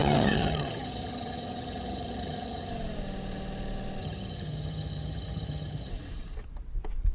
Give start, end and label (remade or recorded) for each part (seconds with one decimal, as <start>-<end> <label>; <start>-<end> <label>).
0.0-2.7 remade; 2.7-4.0 recorded; 4.0-5.9 remade; 5.9-7.1 recorded